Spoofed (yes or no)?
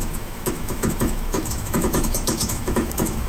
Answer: yes